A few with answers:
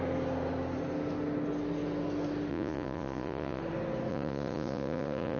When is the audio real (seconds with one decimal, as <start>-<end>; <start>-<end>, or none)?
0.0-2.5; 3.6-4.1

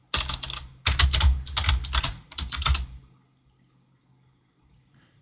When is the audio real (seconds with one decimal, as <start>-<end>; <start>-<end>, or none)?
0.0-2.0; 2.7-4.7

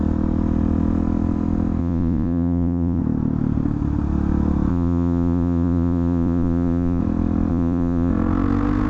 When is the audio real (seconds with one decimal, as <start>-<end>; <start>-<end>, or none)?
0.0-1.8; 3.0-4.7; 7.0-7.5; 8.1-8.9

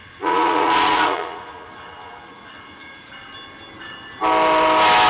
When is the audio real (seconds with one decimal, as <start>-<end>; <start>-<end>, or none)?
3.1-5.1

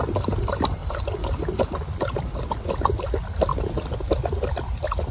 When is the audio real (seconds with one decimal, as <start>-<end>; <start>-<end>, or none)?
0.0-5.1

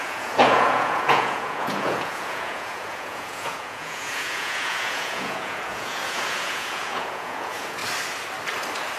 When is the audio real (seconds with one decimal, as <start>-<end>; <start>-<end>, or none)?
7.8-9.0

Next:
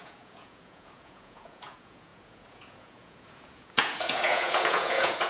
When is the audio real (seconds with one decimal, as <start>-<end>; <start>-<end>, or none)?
none

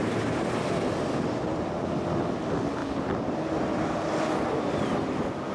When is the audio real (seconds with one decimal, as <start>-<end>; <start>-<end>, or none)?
0.0-5.5